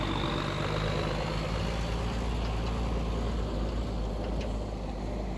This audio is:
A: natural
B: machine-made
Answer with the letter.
A